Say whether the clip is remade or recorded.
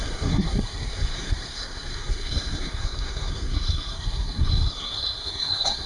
remade